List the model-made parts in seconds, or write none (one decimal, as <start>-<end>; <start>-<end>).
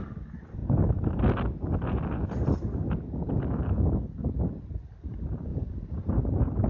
none